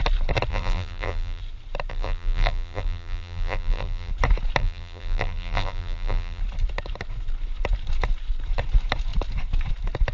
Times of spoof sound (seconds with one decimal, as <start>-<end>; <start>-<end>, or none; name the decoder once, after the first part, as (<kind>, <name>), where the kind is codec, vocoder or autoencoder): 0.5-1.4 (vocoder, BigVGAN v2); 1.9-4.1; 4.6-6.4